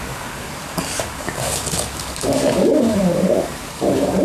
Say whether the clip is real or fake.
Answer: fake